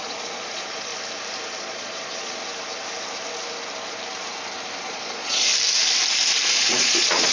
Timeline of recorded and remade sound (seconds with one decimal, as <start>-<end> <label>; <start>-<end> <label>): 0.0-0.9 remade; 0.9-1.6 recorded; 1.6-2.4 remade; 2.4-4.8 recorded; 4.8-5.5 remade; 5.5-6.5 recorded; 6.5-7.3 remade